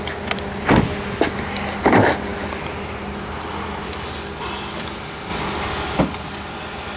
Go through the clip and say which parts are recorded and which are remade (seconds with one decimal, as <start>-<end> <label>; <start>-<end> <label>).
0.0-7.0 recorded